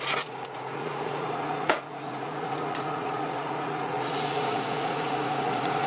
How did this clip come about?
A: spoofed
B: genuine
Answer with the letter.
A